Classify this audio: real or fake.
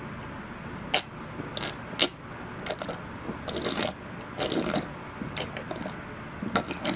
real